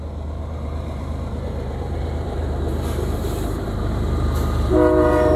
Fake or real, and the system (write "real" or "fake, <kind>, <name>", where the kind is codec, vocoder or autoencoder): fake, vocoder, BigVGAN v2